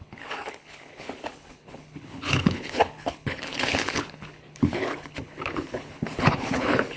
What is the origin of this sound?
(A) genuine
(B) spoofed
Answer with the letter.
B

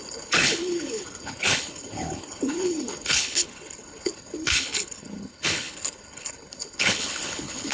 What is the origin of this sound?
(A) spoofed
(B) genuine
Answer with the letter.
A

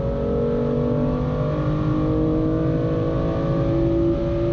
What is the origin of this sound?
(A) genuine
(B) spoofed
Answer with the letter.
A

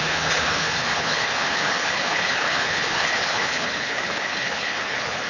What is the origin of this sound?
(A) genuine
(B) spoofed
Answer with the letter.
B